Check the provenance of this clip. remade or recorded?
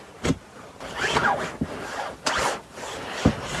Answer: recorded